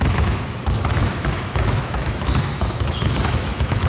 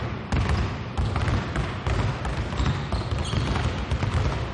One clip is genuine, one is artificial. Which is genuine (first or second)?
second